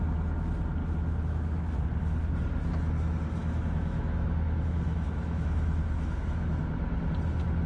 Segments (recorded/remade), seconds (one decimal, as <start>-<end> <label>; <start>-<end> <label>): 0.0-0.8 recorded; 0.8-1.8 remade; 1.8-3.4 recorded; 3.4-6.6 remade; 6.6-7.7 recorded